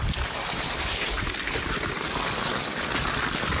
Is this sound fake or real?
real